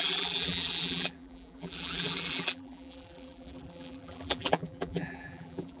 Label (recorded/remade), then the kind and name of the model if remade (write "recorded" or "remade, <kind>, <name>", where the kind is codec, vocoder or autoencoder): remade, vocoder, BigVGAN v2